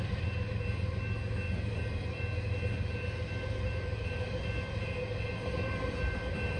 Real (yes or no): yes